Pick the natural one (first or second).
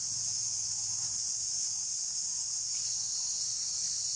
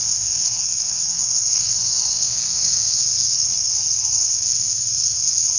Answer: first